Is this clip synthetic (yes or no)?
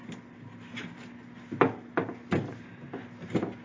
no